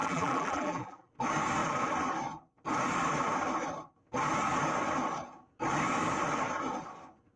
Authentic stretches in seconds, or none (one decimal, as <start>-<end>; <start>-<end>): 1.1-7.4